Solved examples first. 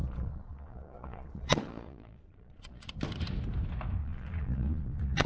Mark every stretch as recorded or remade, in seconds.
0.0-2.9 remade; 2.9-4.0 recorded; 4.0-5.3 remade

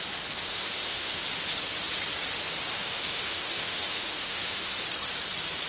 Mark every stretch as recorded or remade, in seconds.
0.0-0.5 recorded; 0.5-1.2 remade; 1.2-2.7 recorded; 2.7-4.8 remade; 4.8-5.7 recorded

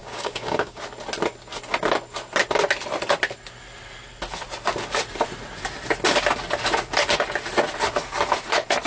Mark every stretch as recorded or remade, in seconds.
0.0-0.8 remade; 0.8-8.9 recorded

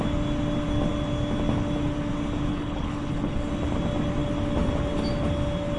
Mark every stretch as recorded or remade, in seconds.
0.0-2.5 recorded; 2.5-3.5 remade; 3.5-5.8 recorded

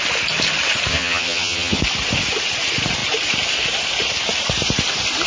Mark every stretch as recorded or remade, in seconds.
0.0-0.9 recorded; 0.9-1.8 remade; 1.8-5.3 recorded

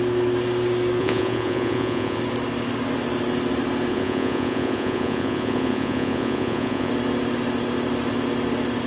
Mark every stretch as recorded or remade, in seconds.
0.0-1.0 recorded; 1.0-2.2 remade; 2.2-3.9 recorded; 3.9-6.9 remade; 6.9-8.9 recorded